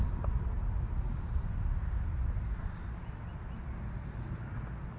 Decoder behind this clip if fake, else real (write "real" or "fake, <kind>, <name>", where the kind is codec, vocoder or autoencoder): real